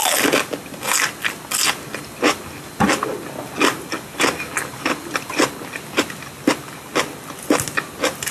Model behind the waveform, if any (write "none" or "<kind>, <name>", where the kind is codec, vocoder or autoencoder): none